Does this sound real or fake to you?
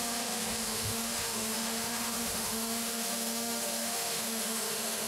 fake